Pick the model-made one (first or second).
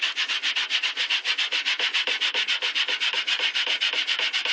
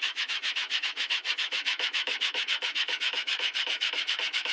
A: second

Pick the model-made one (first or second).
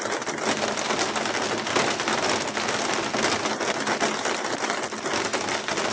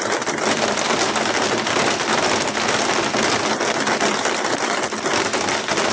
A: second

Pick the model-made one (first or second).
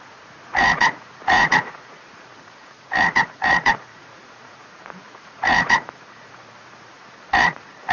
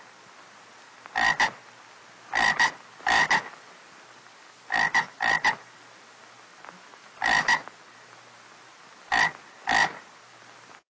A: first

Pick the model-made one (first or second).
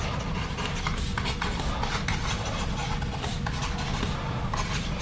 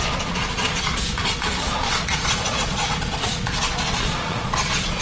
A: second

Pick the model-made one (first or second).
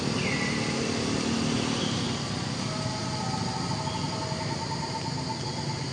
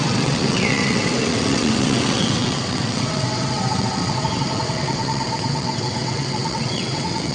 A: second